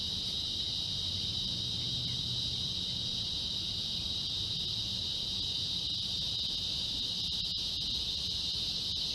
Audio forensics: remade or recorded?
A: remade